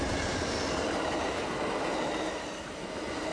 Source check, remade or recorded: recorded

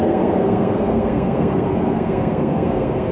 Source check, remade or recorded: remade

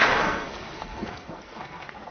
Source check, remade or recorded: remade